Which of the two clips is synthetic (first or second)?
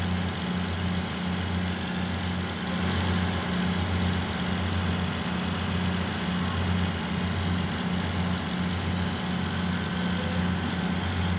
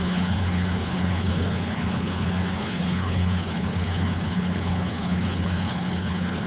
second